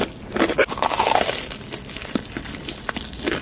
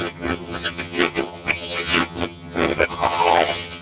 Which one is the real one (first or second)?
first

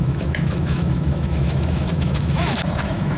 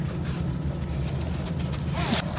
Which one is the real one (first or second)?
second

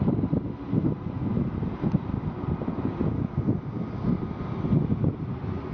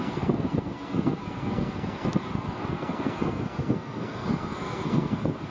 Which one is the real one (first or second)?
first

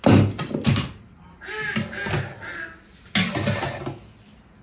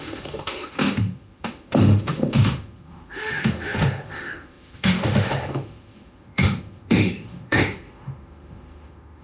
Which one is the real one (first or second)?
first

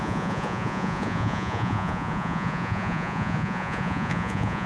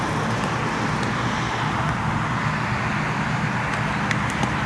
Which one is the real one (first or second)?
second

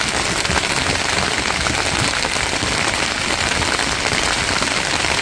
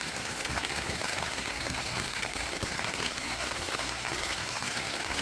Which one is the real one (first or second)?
first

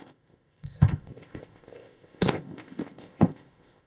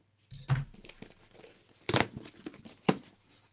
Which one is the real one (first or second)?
second